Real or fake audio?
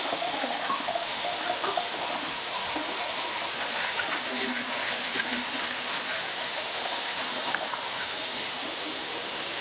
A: fake